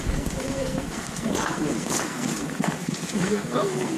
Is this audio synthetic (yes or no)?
yes